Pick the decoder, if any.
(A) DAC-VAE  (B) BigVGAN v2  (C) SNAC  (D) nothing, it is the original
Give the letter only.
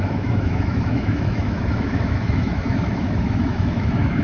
A